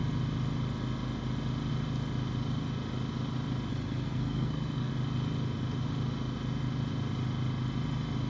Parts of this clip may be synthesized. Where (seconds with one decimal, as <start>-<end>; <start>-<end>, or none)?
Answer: 3.7-4.9